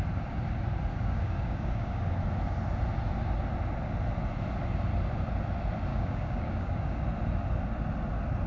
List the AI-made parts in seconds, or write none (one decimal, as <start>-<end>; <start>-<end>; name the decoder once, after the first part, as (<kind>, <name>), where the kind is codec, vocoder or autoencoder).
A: 0.9-2.2 (codec, DAC); 5.9-7.0